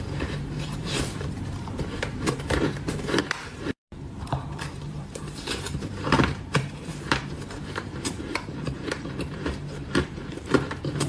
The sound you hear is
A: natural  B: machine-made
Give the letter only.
B